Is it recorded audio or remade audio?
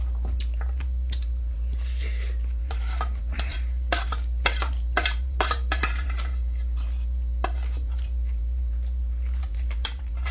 remade